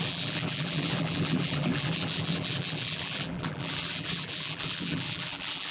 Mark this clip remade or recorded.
remade